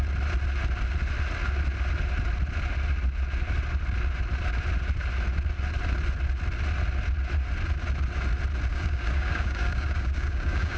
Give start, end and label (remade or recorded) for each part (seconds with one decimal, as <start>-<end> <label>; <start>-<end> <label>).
0.0-8.7 recorded; 8.7-10.8 remade